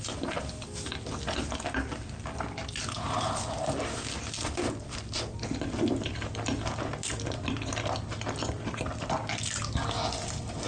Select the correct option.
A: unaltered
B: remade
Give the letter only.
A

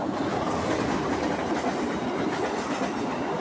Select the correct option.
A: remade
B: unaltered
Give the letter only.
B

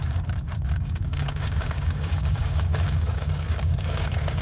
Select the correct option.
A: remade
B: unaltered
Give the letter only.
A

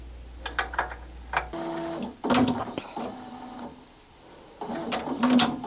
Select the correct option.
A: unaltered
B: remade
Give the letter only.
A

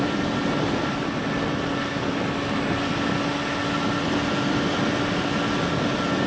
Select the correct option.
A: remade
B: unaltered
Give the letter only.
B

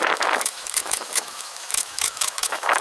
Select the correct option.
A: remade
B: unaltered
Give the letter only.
A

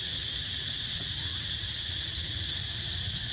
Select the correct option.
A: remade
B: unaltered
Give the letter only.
A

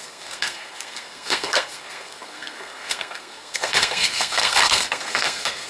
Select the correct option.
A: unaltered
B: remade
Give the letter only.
B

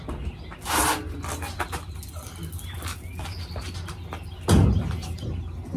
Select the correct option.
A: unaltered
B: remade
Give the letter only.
A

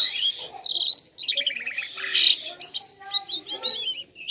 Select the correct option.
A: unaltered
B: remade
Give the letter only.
A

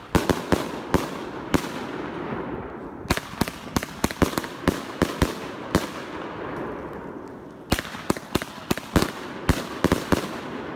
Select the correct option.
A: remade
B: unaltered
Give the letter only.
B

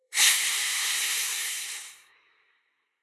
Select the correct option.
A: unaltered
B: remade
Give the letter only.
B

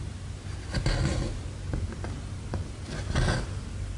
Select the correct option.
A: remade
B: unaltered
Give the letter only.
B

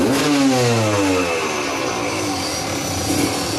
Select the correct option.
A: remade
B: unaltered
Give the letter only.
B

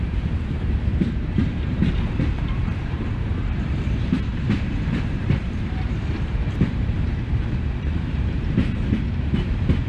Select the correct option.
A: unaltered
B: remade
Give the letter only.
B